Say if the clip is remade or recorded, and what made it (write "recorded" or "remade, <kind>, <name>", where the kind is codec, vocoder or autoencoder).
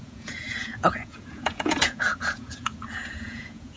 remade, vocoder, Vocos